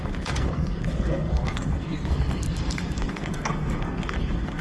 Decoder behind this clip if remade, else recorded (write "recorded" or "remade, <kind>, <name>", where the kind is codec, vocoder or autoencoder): remade, codec, SNAC